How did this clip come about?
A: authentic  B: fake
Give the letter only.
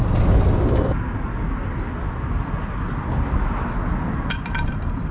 A